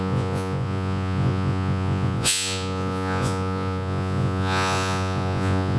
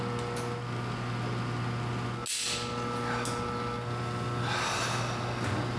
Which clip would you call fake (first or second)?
first